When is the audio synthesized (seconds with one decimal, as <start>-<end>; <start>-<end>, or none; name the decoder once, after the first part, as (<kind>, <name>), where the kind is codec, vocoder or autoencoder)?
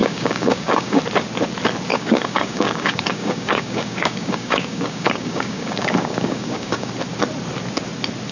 0.0-1.0 (codec, DAC); 1.9-6.9